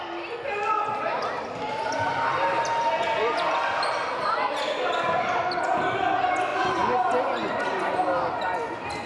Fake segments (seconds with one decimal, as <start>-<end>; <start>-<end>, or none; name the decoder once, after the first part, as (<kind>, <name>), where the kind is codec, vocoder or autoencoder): none